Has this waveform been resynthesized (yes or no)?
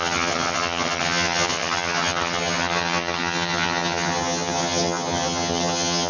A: yes